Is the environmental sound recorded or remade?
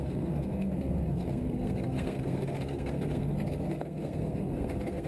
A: remade